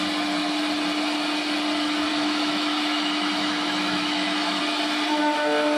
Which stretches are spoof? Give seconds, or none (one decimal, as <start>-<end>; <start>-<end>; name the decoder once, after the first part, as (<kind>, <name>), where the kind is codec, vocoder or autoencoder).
2.1-4.6 (autoencoder, DAC-VAE)